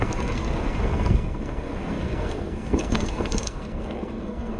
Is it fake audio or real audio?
fake